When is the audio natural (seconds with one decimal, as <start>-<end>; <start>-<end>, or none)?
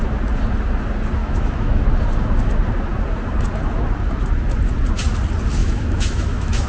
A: 0.0-1.2; 1.8-5.6